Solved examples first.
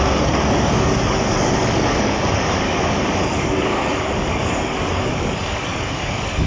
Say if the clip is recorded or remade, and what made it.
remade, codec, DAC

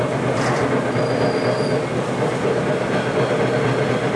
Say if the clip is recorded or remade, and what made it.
recorded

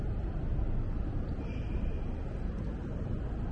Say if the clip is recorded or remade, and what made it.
recorded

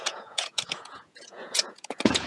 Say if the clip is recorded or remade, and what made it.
remade, vocoder, Vocos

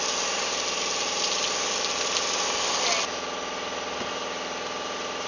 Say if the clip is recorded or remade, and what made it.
recorded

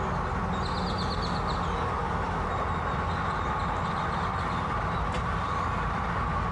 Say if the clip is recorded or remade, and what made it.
recorded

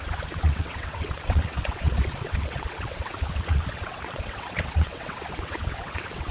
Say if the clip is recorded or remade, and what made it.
remade, vocoder, WaveNeXt